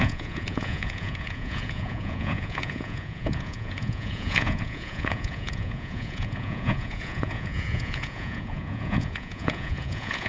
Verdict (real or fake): fake